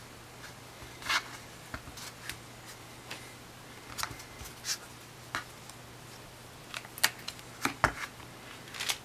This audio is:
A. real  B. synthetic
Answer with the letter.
A